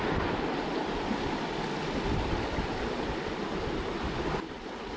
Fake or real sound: real